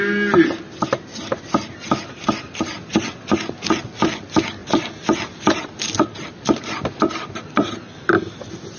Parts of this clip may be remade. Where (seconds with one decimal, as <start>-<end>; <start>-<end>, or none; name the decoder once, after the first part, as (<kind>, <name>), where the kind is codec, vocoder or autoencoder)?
4.6-7.1 (vocoder, BigVGAN v2)